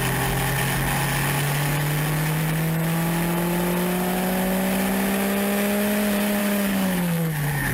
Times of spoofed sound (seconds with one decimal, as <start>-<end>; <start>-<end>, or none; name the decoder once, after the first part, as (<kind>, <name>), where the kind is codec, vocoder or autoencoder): 6.4-7.7 (codec, DAC)